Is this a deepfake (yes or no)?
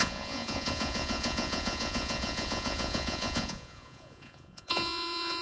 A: yes